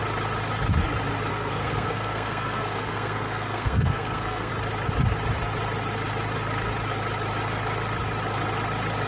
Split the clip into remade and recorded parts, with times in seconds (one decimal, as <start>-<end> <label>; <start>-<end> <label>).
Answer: 0.0-1.3 recorded; 1.3-4.5 remade; 4.5-9.1 recorded